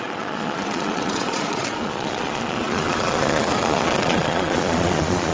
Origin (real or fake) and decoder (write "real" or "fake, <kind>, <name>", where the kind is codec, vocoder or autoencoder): fake, vocoder, Vocos